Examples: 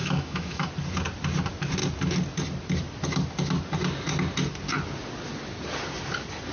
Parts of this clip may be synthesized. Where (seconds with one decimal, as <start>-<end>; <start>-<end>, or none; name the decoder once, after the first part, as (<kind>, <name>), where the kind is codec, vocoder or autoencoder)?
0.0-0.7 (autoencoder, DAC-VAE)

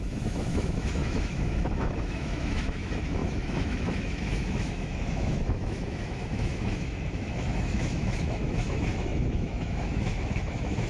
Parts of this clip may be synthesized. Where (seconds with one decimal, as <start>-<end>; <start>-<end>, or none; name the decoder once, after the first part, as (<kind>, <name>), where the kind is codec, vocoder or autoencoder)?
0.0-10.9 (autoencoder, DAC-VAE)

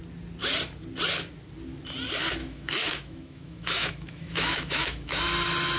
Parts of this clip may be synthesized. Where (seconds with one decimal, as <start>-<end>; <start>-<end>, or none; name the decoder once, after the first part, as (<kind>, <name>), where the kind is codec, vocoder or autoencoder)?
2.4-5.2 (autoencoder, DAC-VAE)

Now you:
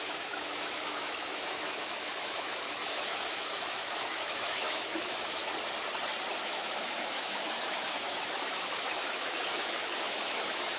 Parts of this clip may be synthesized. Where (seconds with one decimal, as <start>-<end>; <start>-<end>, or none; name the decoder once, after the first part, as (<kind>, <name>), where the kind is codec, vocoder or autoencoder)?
0.0-5.4 (autoencoder, DAC-VAE); 6.4-10.8